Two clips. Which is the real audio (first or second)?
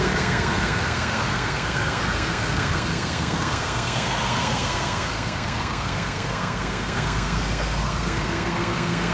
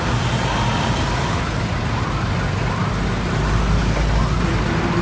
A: second